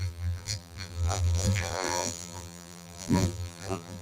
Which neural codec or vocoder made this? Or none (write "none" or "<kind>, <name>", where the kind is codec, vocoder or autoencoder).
vocoder, BigVGAN v2